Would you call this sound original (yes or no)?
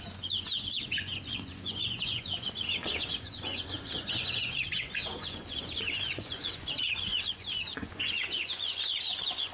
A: no